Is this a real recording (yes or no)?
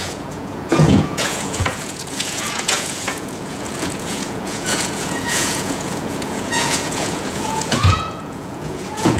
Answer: no